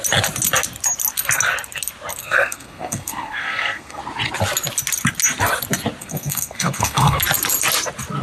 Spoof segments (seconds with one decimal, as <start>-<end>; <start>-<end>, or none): 2.2-4.0; 6.0-7.2